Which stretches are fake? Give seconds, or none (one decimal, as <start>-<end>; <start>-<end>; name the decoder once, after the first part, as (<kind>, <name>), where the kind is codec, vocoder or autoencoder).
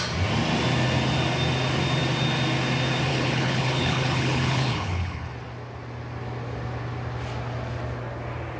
3.1-5.3 (codec, HILCodec)